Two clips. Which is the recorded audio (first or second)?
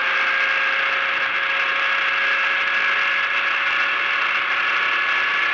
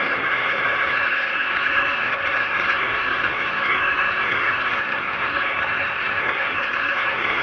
first